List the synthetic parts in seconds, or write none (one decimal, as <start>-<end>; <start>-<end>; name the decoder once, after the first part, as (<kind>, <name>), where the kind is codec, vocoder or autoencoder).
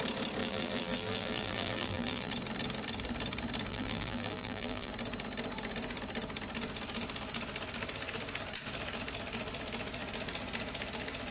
0.4-2.3 (vocoder, BigVGAN v2); 3.7-4.9